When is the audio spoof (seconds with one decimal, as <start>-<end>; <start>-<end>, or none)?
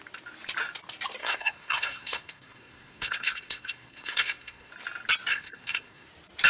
1.2-4.7; 5.3-6.1